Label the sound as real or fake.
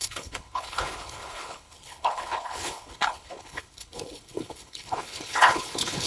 fake